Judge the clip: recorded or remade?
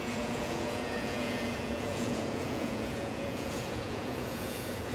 remade